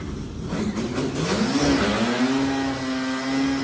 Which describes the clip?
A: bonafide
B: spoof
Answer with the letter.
A